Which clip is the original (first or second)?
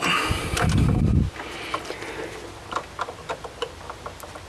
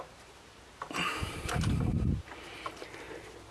first